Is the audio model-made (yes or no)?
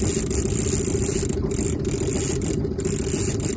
no